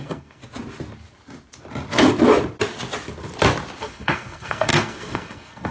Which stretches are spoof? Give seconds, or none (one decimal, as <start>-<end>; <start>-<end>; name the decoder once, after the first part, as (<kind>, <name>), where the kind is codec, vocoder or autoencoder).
0.0-0.4 (codec, SNAC); 3.8-5.7